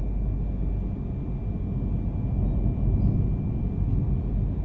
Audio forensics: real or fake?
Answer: real